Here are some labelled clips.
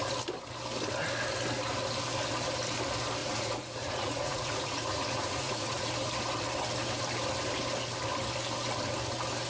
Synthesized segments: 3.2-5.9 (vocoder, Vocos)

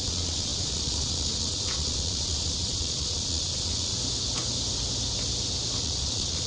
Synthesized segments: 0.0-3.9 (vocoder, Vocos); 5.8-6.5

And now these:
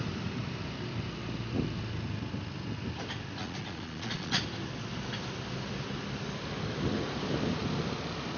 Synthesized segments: 3.4-4.4 (vocoder, Vocos)